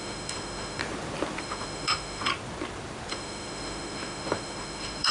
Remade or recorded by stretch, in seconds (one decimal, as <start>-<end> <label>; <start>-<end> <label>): 0.0-0.8 remade; 0.8-1.4 recorded; 1.4-2.3 remade; 2.3-3.1 recorded; 3.1-5.1 remade